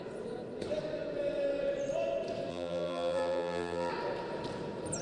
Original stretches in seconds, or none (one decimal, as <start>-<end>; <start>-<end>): 0.0-2.5; 3.9-5.0